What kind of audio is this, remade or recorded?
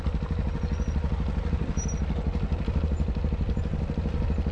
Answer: recorded